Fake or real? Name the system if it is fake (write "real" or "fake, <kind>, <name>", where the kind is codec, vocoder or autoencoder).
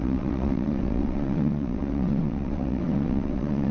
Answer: fake, vocoder, WaveNeXt